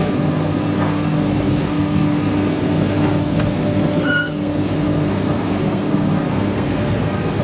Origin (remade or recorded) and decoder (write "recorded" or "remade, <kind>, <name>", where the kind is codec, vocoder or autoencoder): remade, codec, SNAC